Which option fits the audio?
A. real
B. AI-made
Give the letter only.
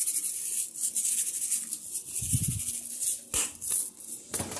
A